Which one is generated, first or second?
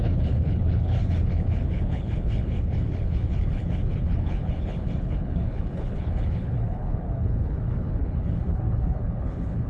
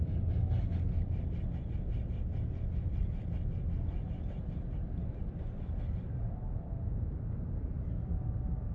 first